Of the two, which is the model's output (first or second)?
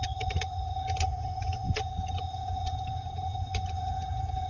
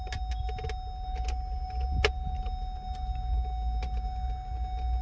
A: first